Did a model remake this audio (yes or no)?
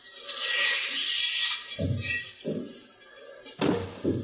no